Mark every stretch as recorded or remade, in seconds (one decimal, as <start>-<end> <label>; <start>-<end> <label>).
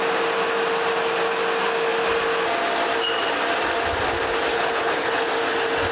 0.0-4.5 recorded; 4.5-5.3 remade; 5.3-5.9 recorded